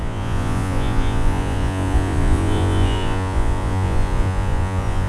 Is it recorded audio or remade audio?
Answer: remade